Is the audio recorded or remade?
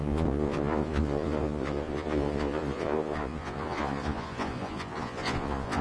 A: remade